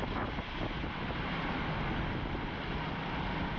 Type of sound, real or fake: real